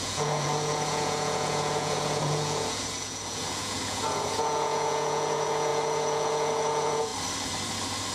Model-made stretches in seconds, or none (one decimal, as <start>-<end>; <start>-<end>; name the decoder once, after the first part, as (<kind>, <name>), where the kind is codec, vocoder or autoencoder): 0.0-7.1 (vocoder, Vocos)